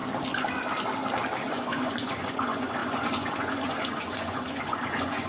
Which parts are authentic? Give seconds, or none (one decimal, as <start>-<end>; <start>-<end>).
0.0-1.5